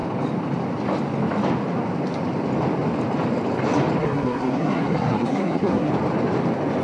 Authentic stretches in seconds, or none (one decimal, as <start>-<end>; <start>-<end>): 0.0-4.0; 5.9-6.8